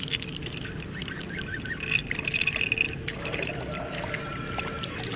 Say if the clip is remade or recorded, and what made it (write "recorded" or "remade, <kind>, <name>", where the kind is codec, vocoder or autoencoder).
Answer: recorded